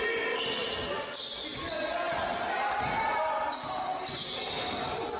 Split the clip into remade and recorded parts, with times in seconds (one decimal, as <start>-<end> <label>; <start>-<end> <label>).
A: 0.0-5.2 recorded